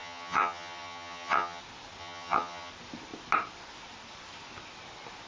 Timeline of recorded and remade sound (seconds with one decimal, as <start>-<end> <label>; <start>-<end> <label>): 0.0-1.6 remade; 1.6-2.0 recorded; 2.0-2.7 remade; 2.7-5.3 recorded

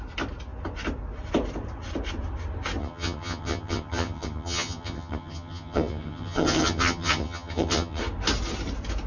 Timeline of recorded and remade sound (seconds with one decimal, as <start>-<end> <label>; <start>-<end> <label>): 0.0-2.8 recorded; 2.8-8.0 remade; 8.0-9.1 recorded

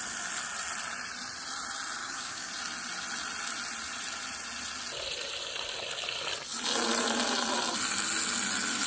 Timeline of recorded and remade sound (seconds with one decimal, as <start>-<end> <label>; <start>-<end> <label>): 0.0-2.0 recorded; 2.0-2.5 remade; 2.5-8.9 recorded

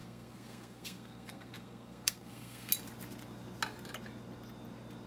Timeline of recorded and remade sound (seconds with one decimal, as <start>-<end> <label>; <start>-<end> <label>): 0.0-2.7 remade; 2.7-5.1 recorded

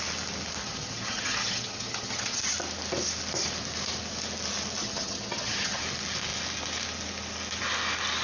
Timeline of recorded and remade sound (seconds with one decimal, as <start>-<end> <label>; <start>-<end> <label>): 0.0-0.6 recorded; 0.6-2.4 remade; 2.4-4.8 recorded; 4.8-5.8 remade; 5.8-8.2 recorded

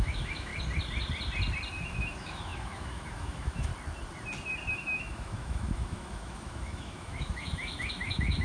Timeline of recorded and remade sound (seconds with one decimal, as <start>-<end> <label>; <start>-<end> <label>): 0.0-0.5 remade; 0.5-1.7 recorded; 1.7-3.7 remade; 3.7-4.7 recorded; 4.7-8.4 remade

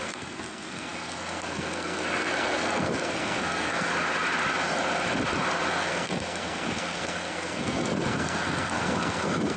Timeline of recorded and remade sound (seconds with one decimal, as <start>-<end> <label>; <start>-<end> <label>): 0.0-3.9 remade; 3.9-5.7 recorded; 5.7-9.6 remade